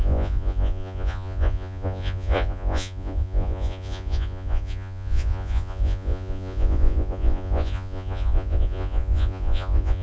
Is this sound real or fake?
fake